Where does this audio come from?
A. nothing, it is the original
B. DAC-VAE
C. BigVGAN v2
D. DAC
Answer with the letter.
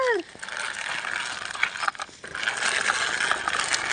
A